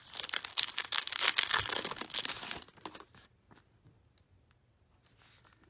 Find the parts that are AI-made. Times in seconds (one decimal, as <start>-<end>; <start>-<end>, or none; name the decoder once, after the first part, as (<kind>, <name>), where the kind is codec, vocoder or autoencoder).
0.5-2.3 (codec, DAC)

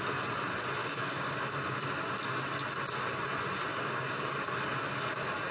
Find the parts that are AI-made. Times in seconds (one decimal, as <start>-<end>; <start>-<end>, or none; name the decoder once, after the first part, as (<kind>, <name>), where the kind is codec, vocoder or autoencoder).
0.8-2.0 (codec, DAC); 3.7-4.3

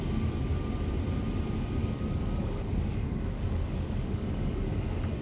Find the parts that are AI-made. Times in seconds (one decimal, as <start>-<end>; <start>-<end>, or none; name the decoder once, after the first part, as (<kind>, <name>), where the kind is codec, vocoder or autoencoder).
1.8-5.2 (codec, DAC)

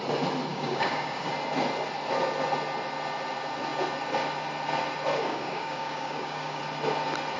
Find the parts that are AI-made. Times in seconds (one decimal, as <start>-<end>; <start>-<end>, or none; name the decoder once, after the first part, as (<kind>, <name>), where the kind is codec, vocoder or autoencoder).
0.5-1.3 (codec, DAC); 5.2-6.6

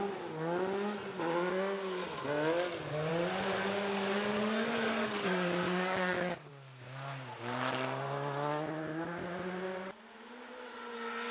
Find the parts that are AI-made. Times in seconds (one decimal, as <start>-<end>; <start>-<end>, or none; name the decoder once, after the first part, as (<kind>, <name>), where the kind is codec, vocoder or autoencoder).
3.1-6.5 (codec, DAC)